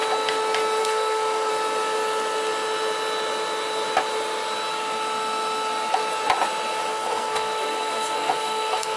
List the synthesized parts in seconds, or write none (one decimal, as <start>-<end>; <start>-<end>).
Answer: 0.8-1.5; 6.9-9.0